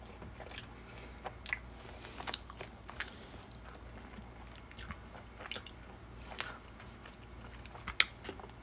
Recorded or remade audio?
recorded